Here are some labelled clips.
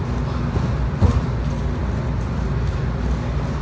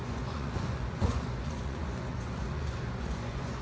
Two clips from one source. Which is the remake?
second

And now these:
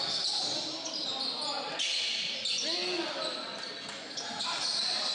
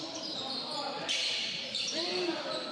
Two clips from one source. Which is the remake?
second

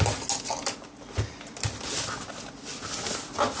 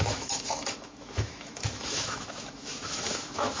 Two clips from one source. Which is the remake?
second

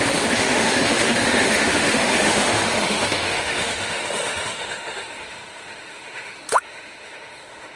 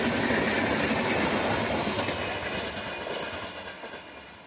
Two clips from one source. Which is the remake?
first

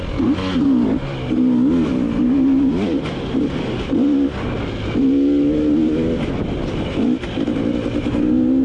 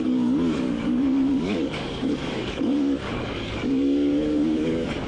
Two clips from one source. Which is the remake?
second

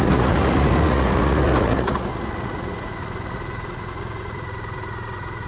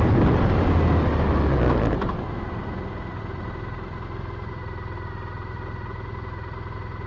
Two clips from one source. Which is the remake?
first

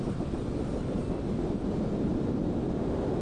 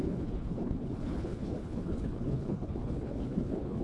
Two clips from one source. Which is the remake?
second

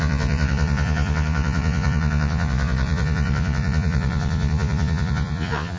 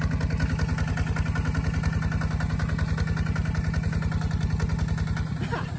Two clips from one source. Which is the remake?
first